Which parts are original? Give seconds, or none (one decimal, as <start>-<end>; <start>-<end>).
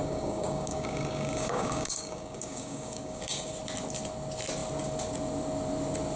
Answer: 3.5-6.2